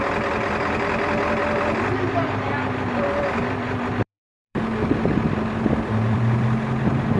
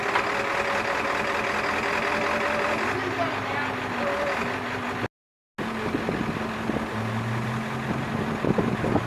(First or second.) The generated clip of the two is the first